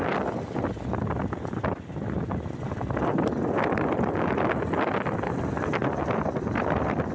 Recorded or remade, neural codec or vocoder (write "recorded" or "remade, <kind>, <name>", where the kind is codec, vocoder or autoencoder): recorded